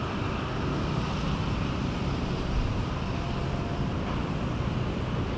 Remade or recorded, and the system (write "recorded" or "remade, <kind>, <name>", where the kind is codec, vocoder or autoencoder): recorded